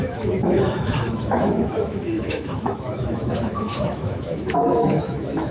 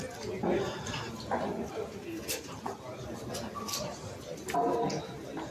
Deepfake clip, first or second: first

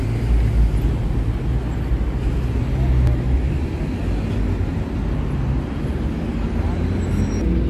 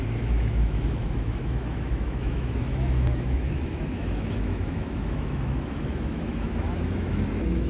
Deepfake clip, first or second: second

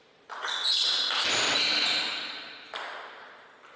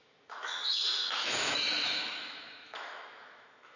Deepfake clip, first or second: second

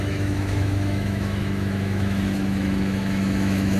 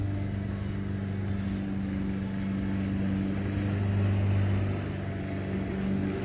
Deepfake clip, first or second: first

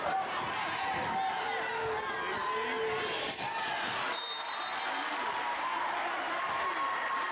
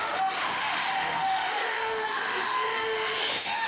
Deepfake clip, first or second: second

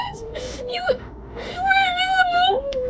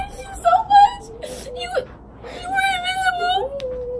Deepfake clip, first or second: first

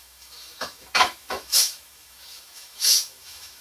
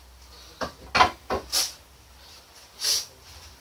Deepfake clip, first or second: first